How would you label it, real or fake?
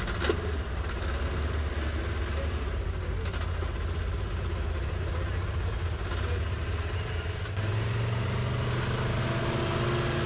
real